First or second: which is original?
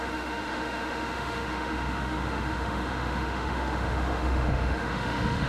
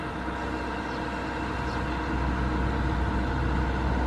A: second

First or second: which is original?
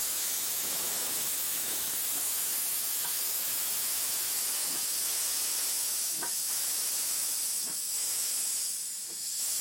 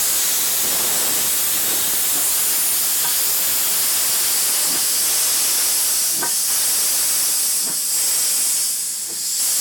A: second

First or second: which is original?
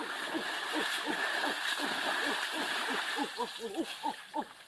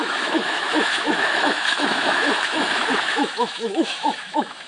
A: first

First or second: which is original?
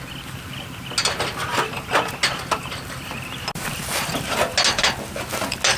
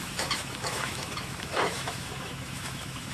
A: first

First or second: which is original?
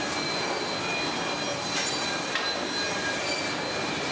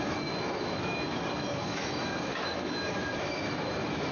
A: first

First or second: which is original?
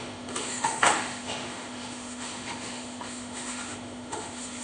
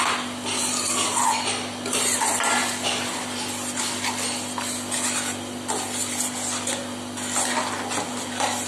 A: second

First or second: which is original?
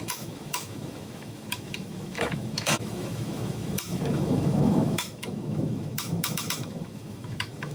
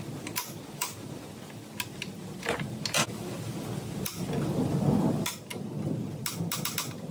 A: second